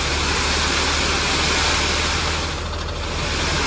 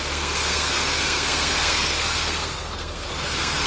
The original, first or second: first